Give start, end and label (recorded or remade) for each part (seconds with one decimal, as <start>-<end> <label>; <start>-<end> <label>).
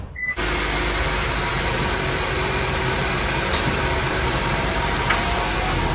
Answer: 0.0-1.5 recorded; 1.5-5.0 remade; 5.0-5.9 recorded